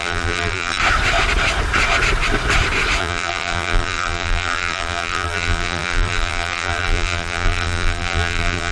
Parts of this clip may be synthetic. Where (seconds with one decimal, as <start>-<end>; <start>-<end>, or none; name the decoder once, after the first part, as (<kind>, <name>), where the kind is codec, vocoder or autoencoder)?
0.0-0.8 (vocoder, BigVGAN v2); 3.0-8.7